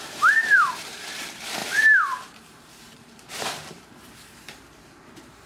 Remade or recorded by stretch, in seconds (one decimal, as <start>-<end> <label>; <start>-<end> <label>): 0.0-5.5 remade